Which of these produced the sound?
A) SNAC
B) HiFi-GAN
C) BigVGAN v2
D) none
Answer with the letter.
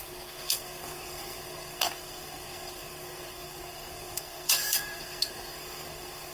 A